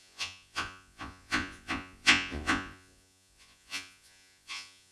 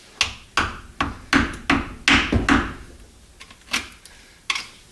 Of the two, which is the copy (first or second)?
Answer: first